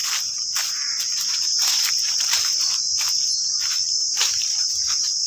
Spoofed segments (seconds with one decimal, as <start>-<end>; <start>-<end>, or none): 1.9-2.9; 4.1-5.3